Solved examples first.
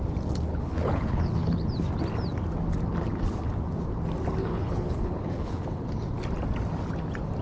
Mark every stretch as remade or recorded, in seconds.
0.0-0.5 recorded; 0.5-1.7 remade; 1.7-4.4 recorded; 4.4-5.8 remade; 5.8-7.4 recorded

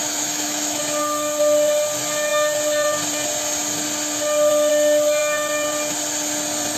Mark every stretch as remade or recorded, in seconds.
0.0-0.8 remade; 0.8-6.8 recorded

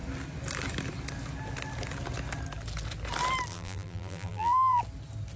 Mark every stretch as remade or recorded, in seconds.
0.0-3.5 recorded; 3.5-4.8 remade; 4.8-5.4 recorded